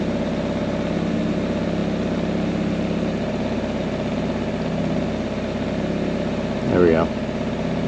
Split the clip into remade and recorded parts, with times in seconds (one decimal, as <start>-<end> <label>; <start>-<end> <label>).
0.0-7.9 recorded